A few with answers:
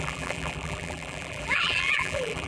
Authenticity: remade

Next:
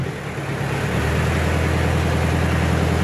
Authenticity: recorded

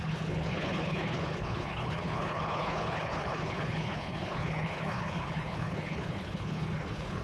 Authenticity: remade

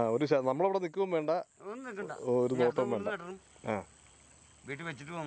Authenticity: recorded